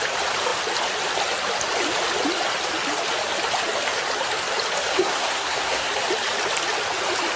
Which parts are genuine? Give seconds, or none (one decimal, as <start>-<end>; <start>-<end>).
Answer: 0.0-4.9; 5.9-7.4